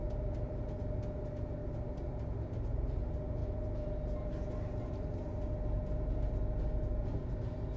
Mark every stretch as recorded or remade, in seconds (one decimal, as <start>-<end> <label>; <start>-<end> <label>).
0.0-7.8 recorded